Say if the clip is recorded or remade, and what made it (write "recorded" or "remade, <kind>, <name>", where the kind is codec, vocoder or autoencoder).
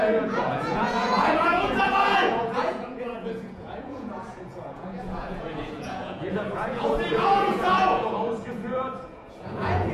remade, vocoder, Vocos